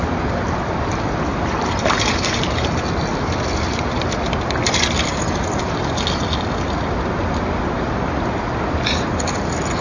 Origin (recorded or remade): recorded